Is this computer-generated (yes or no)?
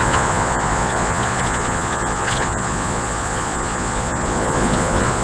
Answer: yes